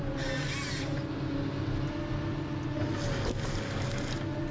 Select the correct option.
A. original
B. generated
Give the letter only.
A